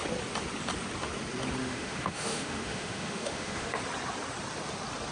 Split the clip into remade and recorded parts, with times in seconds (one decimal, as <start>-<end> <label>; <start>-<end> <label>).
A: 0.0-1.6 recorded; 1.6-3.8 remade; 3.8-5.1 recorded